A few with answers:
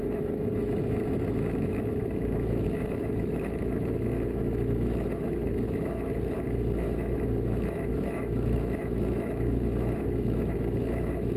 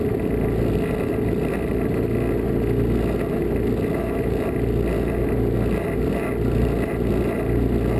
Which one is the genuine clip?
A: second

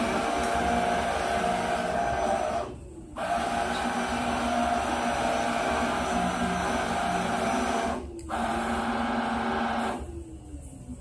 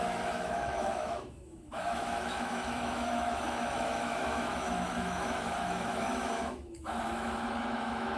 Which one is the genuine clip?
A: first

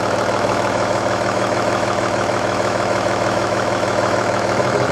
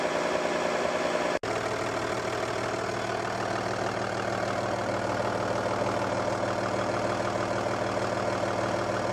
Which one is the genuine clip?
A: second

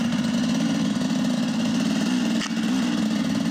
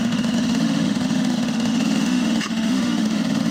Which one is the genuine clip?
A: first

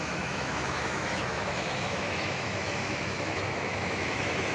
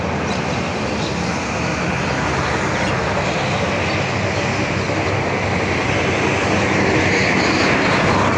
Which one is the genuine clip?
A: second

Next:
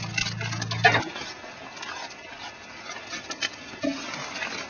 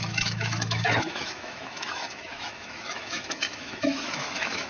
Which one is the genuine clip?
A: first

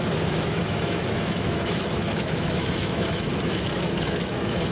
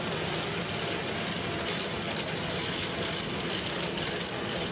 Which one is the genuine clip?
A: second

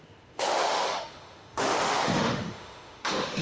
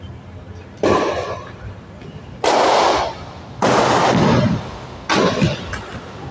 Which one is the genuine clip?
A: second